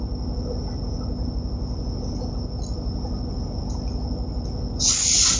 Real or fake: real